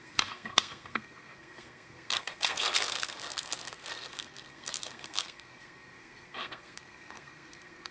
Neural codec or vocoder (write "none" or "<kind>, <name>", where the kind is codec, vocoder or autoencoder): codec, SNAC